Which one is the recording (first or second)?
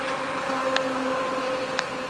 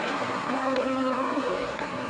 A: first